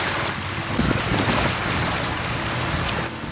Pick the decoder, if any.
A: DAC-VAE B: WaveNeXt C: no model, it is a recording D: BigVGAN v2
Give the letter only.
C